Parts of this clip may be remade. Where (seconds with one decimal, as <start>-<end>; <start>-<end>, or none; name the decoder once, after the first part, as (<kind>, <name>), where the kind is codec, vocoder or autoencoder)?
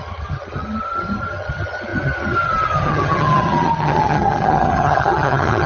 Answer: 0.0-5.7 (vocoder, HiFi-GAN)